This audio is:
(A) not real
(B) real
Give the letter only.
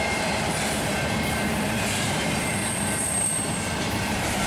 A